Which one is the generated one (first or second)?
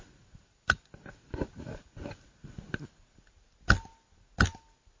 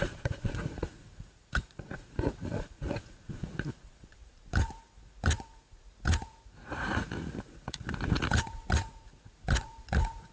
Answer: second